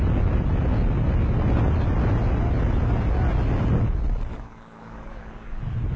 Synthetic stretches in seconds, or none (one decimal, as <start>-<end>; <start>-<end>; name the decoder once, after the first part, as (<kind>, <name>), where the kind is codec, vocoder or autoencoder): 4.3-5.6 (codec, DAC)